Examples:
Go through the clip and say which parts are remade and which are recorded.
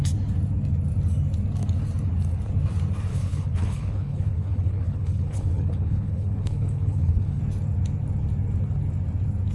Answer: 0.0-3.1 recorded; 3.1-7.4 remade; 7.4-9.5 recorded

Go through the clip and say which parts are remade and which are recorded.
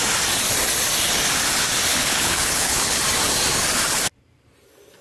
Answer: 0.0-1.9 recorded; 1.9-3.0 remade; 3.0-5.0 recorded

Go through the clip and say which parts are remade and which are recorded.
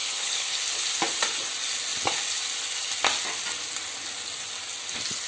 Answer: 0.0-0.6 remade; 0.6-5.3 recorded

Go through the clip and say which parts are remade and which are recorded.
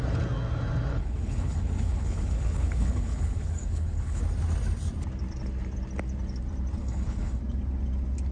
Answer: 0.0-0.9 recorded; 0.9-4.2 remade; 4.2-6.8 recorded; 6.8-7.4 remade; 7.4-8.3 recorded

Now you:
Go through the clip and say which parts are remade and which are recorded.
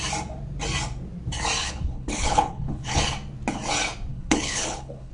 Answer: 0.0-1.6 recorded; 1.6-3.0 remade; 3.0-4.1 recorded; 4.1-5.1 remade